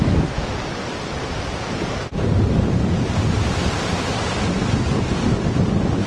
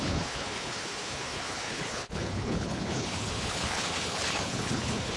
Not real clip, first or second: second